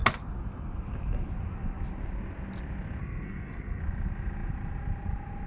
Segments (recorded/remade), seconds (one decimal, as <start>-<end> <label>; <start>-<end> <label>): 0.0-3.0 recorded; 3.0-3.8 remade; 3.8-5.5 recorded